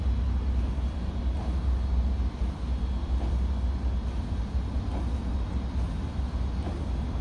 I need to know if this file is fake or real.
real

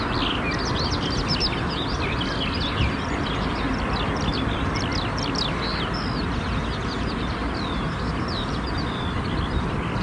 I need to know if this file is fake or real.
real